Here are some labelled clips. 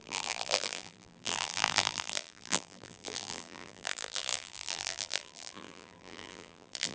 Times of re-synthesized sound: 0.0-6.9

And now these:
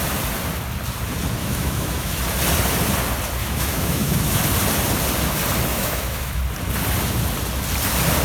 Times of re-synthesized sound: 1.4-2.2; 3.4-4.4; 5.7-6.4

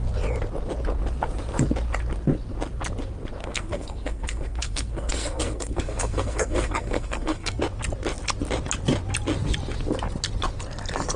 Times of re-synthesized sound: 3.4-7.6

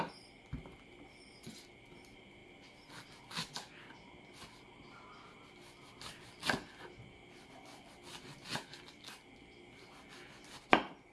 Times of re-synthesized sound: none

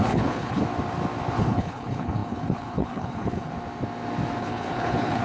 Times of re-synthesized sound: 0.0-0.6; 1.4-3.5; 4.4-5.2

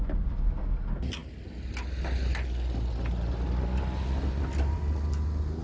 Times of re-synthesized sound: none

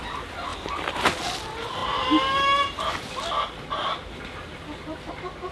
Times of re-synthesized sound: none

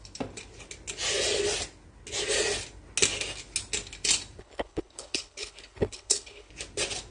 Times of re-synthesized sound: 4.4-6.5